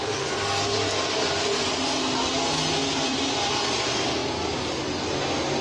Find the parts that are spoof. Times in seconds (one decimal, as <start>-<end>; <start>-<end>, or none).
2.8-3.5